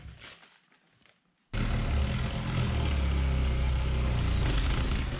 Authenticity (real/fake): real